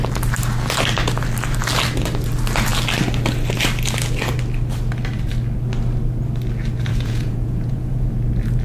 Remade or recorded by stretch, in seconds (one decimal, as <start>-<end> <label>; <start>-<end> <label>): 0.0-6.9 recorded; 6.9-8.1 remade; 8.1-8.6 recorded